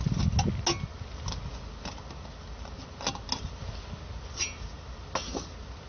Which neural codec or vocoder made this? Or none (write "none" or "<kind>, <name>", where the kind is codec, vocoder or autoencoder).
none